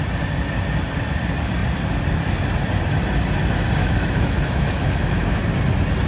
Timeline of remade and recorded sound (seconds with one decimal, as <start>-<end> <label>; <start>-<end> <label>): 0.0-3.8 recorded; 3.8-5.4 remade; 5.4-6.1 recorded